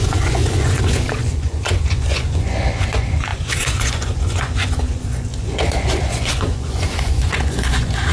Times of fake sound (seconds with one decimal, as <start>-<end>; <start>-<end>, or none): 0.0-8.1